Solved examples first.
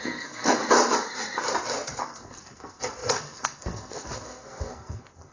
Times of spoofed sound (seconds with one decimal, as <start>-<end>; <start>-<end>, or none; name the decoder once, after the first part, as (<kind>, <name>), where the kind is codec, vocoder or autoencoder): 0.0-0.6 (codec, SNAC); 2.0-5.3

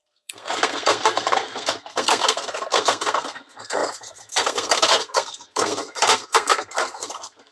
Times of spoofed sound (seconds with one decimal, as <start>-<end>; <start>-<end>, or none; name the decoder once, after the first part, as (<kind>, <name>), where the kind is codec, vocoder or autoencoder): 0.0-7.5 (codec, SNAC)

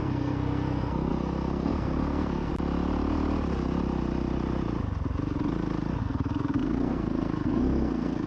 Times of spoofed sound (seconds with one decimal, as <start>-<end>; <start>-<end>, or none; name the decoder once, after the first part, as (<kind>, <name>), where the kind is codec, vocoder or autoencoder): 0.0-2.5 (codec, SNAC); 6.0-8.3